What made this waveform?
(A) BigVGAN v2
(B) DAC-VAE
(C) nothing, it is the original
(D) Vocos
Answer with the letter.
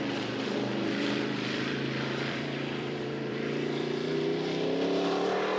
A